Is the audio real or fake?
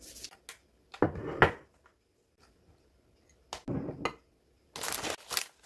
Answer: real